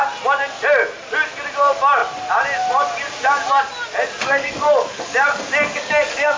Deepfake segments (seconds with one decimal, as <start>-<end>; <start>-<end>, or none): 4.2-6.4